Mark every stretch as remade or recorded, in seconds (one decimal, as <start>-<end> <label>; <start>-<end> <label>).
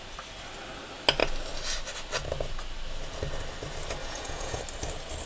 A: 0.0-4.0 recorded; 4.0-4.6 remade; 4.6-5.3 recorded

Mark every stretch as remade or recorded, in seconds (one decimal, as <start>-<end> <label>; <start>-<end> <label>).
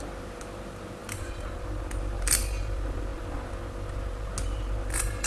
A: 0.0-5.3 recorded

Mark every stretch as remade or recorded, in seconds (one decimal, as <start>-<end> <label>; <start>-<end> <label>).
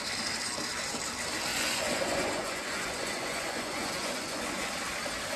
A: 0.0-1.5 recorded; 1.5-4.7 remade; 4.7-5.4 recorded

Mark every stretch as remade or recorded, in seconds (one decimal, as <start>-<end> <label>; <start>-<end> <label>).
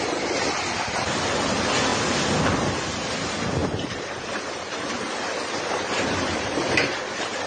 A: 0.0-7.5 recorded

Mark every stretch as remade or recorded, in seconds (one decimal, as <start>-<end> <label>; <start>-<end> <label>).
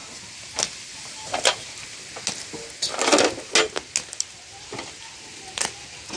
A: 0.0-6.2 recorded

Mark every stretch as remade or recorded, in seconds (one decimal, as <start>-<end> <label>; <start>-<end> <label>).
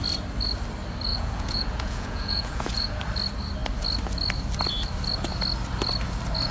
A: 0.0-1.1 recorded; 1.1-3.0 remade; 3.0-6.5 recorded